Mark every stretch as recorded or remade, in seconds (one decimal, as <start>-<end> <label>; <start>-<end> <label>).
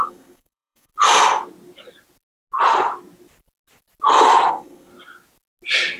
0.0-0.9 remade; 0.9-4.5 recorded; 4.5-4.9 remade; 4.9-6.0 recorded